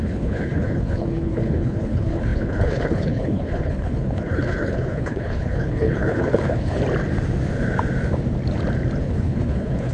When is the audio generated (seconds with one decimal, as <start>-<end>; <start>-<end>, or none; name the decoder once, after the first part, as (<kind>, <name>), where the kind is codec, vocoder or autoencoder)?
0.0-6.8 (codec, HILCodec); 9.0-9.9